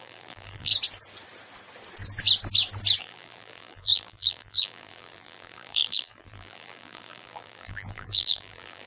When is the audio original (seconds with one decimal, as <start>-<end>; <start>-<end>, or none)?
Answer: 0.7-3.0